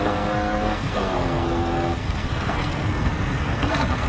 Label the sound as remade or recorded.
remade